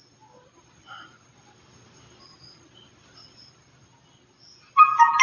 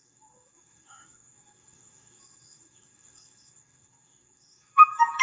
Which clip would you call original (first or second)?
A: first